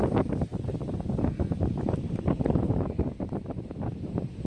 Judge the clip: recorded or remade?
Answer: remade